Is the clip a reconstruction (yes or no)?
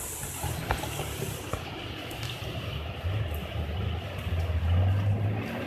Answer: no